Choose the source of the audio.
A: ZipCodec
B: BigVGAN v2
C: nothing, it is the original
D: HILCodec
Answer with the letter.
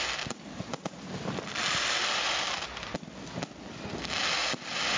C